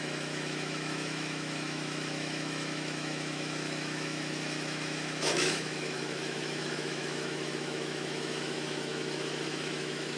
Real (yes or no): no